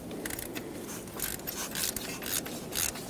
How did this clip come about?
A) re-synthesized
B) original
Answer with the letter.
B